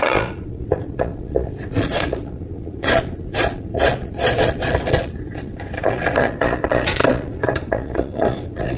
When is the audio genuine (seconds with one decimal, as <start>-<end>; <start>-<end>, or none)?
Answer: none